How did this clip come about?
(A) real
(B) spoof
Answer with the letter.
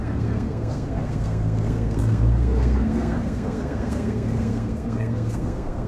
B